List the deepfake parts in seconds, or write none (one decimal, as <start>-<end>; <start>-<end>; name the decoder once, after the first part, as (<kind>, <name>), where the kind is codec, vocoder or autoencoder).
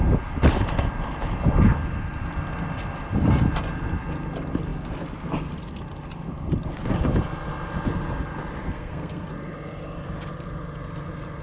8.6-9.3 (codec, SNAC)